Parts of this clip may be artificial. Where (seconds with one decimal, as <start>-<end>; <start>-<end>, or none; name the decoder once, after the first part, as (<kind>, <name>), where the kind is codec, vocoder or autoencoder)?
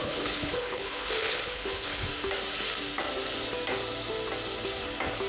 0.0-2.1 (codec, HILCodec)